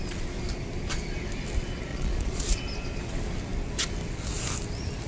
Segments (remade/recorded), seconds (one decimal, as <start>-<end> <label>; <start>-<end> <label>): 0.0-1.9 recorded; 1.9-2.5 remade; 2.5-5.1 recorded